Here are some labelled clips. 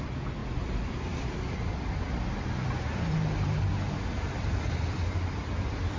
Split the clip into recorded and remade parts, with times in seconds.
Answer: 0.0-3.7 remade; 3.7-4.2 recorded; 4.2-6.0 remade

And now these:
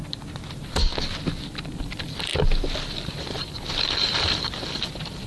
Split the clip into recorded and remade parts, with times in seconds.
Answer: 0.0-0.5 recorded; 0.5-0.9 remade; 0.9-1.8 recorded; 1.8-5.3 remade

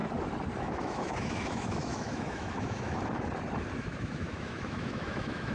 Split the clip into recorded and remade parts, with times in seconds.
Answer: 0.0-0.6 recorded; 0.6-3.0 remade; 3.0-3.8 recorded; 3.8-5.5 remade

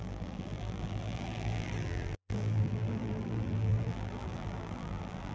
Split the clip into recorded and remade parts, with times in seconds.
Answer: 0.0-5.3 remade

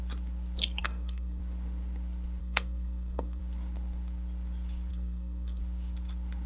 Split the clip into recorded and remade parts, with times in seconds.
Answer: 0.0-0.8 recorded; 0.8-1.4 remade; 1.4-2.4 recorded; 2.4-3.4 remade; 3.4-4.9 recorded; 4.9-5.6 remade; 5.6-6.5 recorded